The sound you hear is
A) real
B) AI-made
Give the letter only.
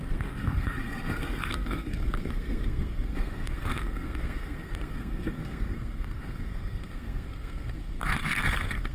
B